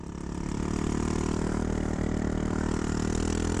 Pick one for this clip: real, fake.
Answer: fake